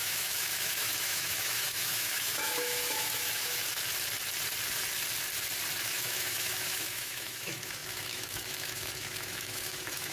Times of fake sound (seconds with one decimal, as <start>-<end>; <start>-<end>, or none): 0.0-3.6; 5.8-10.1